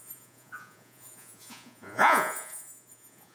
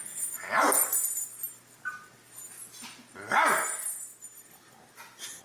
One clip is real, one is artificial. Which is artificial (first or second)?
first